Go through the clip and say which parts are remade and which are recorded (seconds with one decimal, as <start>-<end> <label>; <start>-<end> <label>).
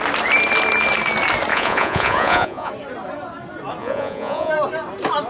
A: 0.0-1.5 recorded; 1.5-2.7 remade; 2.7-3.8 recorded; 3.8-4.5 remade; 4.5-5.3 recorded